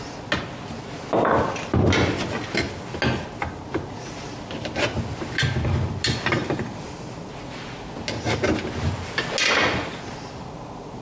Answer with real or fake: real